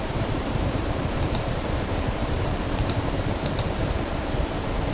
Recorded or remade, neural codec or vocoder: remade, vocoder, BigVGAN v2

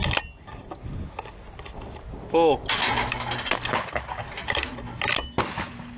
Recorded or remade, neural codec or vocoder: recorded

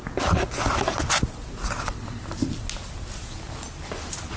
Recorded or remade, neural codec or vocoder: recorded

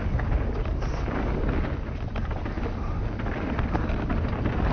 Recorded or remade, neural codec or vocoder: recorded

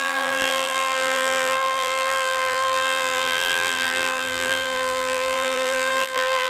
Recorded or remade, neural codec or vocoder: remade, vocoder, BigVGAN v2